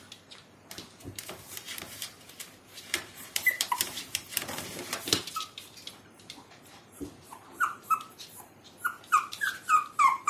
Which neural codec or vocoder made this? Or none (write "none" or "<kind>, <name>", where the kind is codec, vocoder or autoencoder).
vocoder, BigVGAN v2